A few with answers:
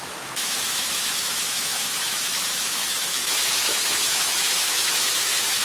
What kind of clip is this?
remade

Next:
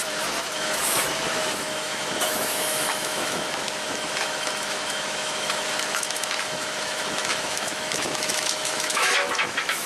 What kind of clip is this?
remade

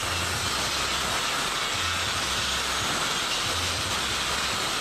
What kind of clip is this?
recorded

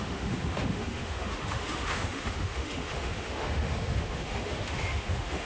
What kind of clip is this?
remade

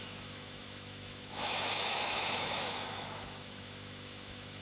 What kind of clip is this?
remade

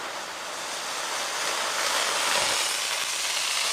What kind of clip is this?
recorded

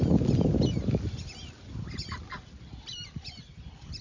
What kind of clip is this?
recorded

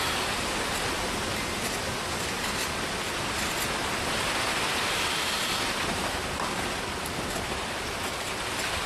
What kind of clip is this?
recorded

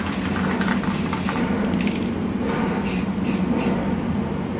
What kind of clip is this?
recorded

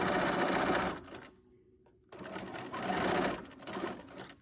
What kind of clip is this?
recorded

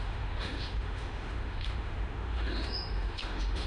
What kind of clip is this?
remade